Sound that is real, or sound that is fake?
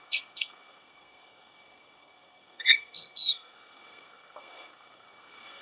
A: fake